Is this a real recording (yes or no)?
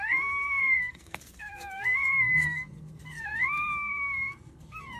no